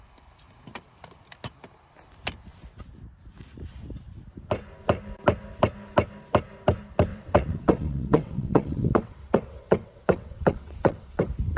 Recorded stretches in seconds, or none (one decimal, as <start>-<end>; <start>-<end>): 0.0-7.1; 11.2-11.6